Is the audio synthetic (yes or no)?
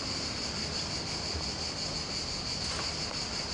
no